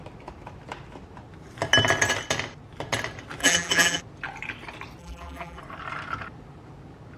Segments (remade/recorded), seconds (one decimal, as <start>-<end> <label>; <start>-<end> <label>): 0.0-3.4 recorded; 3.4-4.0 remade; 4.0-5.0 recorded; 5.0-5.6 remade; 5.6-7.2 recorded